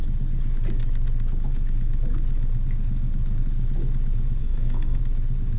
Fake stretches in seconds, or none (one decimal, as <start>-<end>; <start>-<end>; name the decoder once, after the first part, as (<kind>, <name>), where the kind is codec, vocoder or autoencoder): 4.4-5.0 (codec, SNAC)

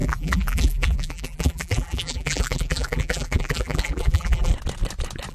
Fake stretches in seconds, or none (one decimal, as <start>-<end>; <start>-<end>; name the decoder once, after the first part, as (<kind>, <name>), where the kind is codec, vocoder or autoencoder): 0.0-4.5 (vocoder, BigVGAN v2)